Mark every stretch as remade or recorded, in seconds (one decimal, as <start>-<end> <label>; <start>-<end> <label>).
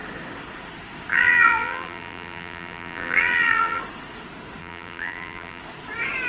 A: 0.0-1.1 recorded; 1.1-3.8 remade; 3.8-4.6 recorded; 4.6-5.6 remade; 5.6-6.3 recorded